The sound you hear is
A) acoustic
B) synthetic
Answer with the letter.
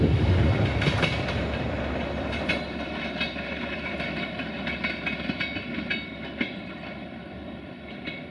A